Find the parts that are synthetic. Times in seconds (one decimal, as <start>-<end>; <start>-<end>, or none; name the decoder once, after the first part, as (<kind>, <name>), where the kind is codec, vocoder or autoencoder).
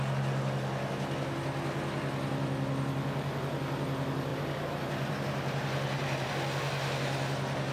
4.3-6.3 (vocoder, BigVGAN v2)